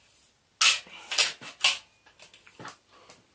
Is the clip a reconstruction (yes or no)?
no